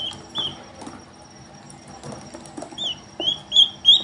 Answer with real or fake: real